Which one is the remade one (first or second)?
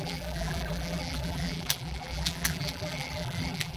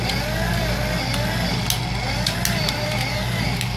first